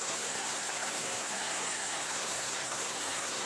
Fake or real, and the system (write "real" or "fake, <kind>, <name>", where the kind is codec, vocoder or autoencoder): fake, codec, SNAC